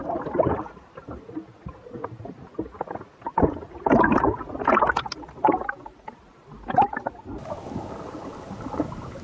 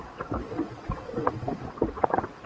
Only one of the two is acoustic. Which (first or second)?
first